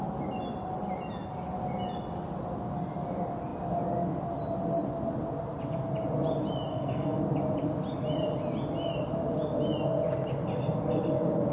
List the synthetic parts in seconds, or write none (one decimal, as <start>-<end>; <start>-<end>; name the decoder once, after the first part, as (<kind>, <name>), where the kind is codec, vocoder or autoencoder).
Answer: 6.7-7.2 (codec, SNAC)

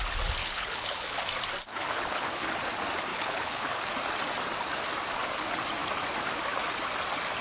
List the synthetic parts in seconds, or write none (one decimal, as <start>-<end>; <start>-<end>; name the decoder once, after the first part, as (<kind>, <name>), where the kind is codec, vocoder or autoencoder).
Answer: 0.4-1.2 (codec, HILCodec); 1.7-2.5; 3.1-3.9

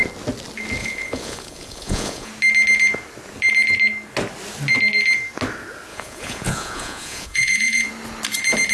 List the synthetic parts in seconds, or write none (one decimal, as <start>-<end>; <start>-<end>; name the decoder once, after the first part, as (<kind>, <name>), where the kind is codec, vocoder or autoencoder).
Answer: 0.8-2.3 (vocoder, Vocos); 5.9-7.9

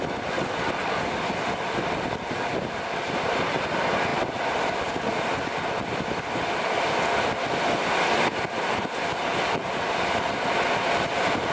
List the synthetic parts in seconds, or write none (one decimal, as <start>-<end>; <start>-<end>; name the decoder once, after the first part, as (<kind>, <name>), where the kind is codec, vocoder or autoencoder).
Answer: none

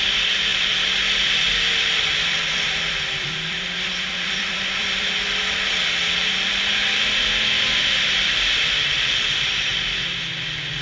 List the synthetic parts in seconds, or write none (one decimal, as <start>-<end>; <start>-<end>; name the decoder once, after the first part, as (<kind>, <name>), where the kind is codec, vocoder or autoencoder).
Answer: 0.0-6.8 (vocoder, BigVGAN v2); 7.7-9.7

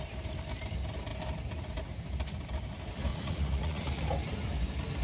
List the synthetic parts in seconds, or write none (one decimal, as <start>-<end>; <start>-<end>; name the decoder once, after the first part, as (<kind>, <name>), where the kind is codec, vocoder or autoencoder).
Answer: 3.1-4.0 (vocoder, Vocos)

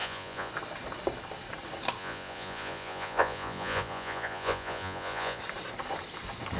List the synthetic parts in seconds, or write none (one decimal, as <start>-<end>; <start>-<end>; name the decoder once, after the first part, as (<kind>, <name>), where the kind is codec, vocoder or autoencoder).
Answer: 0.0-0.5 (vocoder, Vocos); 2.0-5.4

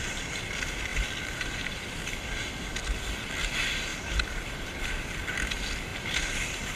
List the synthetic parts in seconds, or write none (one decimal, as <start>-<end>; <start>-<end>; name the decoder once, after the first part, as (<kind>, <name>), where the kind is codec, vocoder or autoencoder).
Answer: 0.9-1.7 (vocoder, BigVGAN v2); 3.9-5.1; 5.9-6.8